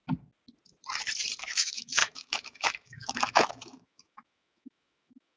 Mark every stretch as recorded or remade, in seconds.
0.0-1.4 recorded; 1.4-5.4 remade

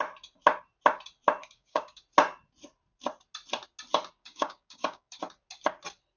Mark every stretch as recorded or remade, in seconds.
0.0-1.4 recorded; 1.4-2.0 remade; 2.0-4.2 recorded; 4.2-5.2 remade; 5.2-6.2 recorded

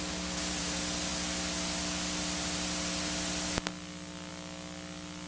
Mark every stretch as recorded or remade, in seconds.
0.0-5.3 recorded

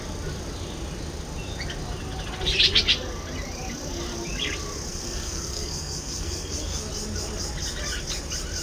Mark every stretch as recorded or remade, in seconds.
0.0-4.9 recorded; 4.9-6.9 remade; 6.9-8.6 recorded

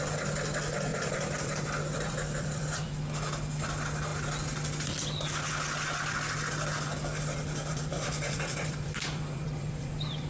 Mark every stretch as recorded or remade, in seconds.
0.0-0.9 recorded; 0.9-2.9 remade; 2.9-7.7 recorded; 7.7-10.3 remade

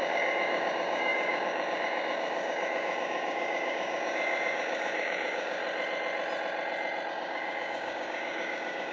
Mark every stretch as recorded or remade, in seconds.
0.0-5.6 remade; 5.6-7.1 recorded; 7.1-8.9 remade

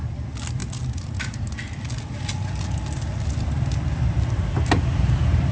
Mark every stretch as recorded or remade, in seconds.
0.0-5.5 recorded

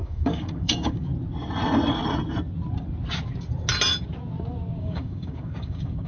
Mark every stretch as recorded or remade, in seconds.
0.0-1.1 remade; 1.1-4.8 recorded; 4.8-6.1 remade